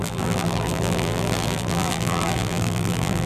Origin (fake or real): fake